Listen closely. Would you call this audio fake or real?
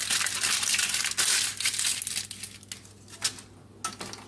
real